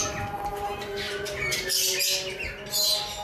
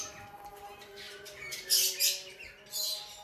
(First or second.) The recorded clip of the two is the first